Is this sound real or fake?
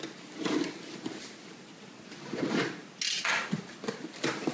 real